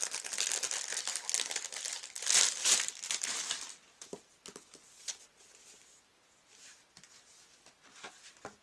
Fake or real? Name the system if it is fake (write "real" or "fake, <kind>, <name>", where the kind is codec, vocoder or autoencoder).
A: real